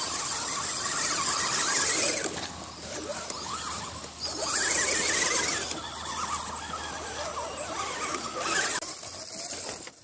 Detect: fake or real real